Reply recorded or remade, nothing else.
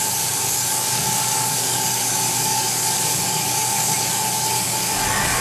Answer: remade